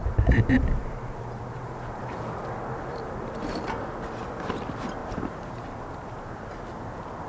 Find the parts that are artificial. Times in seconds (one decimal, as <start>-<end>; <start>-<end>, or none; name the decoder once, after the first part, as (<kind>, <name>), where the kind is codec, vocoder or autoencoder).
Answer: 0.0-3.8 (vocoder, BigVGAN v2); 5.0-6.3

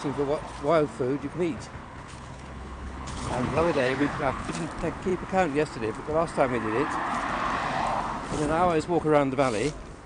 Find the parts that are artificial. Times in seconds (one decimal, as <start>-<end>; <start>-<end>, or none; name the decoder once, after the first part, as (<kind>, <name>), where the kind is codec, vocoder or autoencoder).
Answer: 1.8-4.5 (codec, HILCodec)

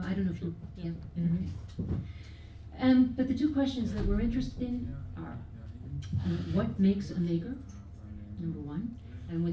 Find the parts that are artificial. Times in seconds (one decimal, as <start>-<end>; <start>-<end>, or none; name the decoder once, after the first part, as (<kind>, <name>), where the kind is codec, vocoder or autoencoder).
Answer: none

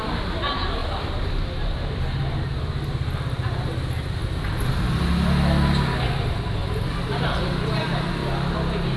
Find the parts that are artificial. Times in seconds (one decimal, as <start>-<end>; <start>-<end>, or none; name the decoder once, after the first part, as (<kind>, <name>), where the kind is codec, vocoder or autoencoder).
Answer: 0.8-2.4 (vocoder, BigVGAN v2); 4.2-4.8; 6.6-8.1

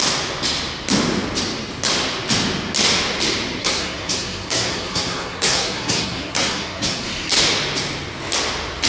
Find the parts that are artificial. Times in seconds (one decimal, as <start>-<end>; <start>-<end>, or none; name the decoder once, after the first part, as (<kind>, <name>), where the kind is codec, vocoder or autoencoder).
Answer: 3.6-7.3 (codec, SNAC)